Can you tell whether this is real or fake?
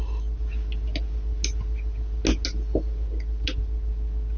real